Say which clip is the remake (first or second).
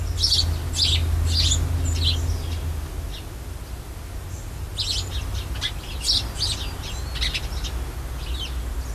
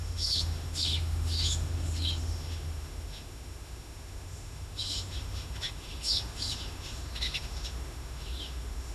second